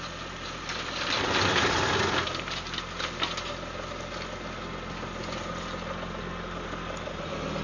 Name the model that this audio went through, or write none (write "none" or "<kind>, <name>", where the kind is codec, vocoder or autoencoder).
none